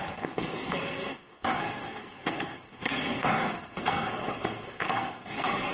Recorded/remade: remade